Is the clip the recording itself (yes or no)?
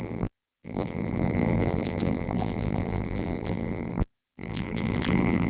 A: no